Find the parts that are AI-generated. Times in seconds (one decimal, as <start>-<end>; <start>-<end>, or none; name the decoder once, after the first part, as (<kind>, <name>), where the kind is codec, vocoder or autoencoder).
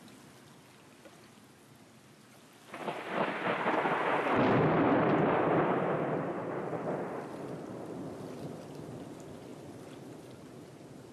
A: none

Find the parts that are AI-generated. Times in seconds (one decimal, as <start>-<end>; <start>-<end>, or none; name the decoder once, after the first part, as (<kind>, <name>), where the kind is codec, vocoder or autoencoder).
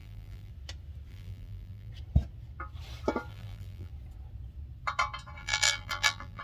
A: 0.0-0.5 (vocoder, BigVGAN v2); 1.1-1.9; 3.3-3.9; 5.4-6.4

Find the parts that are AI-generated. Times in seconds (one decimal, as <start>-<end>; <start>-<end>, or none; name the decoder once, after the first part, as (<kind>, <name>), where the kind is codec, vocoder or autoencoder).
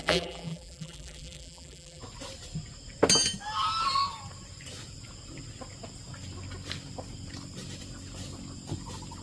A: 0.0-2.0 (vocoder, BigVGAN v2)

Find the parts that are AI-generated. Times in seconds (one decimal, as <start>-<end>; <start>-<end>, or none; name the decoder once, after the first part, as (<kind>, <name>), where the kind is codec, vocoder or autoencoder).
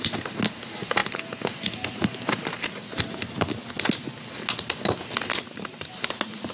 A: none